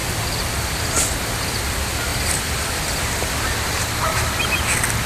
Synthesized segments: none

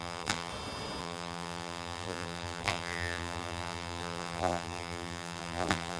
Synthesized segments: 0.0-0.5 (vocoder, BigVGAN v2); 1.0-6.0